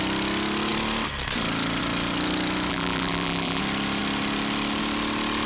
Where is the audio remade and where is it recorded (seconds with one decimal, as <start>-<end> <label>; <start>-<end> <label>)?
0.0-2.7 recorded; 2.7-3.6 remade; 3.6-5.5 recorded